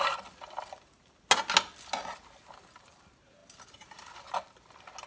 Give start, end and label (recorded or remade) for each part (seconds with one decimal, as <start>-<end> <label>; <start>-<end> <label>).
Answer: 0.0-5.1 recorded

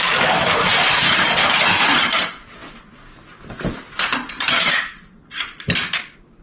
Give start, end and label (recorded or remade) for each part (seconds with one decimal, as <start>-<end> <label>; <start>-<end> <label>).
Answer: 0.0-6.4 recorded